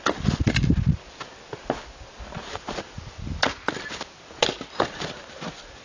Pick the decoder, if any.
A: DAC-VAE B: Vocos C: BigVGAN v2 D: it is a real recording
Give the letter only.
D